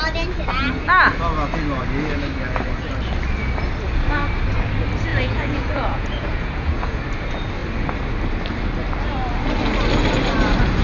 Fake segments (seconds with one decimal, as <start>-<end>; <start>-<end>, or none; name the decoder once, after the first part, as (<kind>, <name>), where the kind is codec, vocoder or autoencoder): 5.1-7.0 (vocoder, Vocos)